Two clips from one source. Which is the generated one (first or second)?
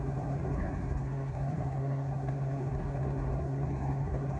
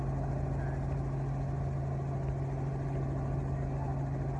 first